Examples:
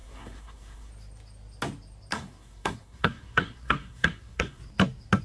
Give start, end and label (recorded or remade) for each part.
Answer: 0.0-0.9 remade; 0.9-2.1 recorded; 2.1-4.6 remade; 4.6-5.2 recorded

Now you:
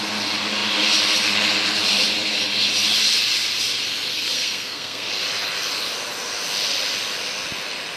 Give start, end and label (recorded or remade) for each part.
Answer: 0.0-4.1 recorded; 4.1-5.1 remade; 5.1-8.0 recorded